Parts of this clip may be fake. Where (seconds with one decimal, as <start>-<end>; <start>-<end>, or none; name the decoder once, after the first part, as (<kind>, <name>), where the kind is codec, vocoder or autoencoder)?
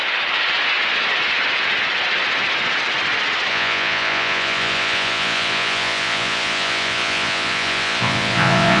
3.5-8.8 (vocoder, Vocos)